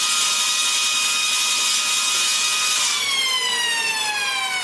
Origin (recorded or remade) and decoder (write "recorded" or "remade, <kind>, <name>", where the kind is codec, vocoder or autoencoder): recorded